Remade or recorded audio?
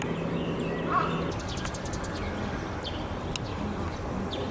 recorded